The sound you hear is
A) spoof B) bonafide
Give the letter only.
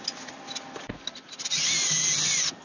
B